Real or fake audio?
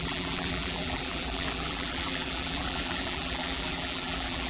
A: fake